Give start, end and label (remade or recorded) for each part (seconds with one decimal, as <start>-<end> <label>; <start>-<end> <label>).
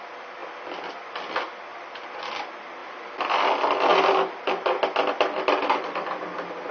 0.0-1.7 recorded; 1.7-2.2 remade; 2.2-6.7 recorded